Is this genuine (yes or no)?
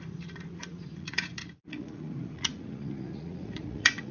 no